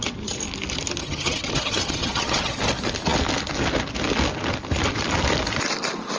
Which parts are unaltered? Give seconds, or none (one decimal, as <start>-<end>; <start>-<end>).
0.0-1.0; 2.6-6.2